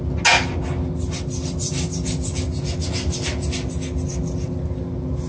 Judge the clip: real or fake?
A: real